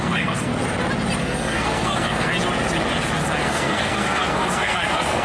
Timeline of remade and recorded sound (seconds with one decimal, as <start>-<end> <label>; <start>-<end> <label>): 0.0-0.5 remade; 0.5-1.2 recorded; 1.2-2.3 remade; 2.3-3.4 recorded; 3.4-5.2 remade